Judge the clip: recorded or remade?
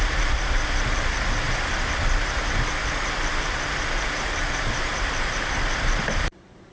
remade